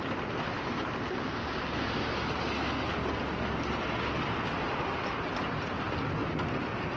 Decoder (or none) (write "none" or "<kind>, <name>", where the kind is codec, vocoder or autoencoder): none